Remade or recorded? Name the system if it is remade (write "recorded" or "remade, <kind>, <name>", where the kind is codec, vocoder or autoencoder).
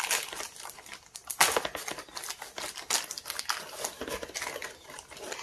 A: recorded